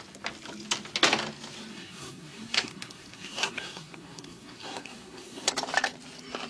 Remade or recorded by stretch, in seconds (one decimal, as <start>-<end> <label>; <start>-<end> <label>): 0.0-1.7 recorded; 1.7-5.5 remade; 5.5-6.5 recorded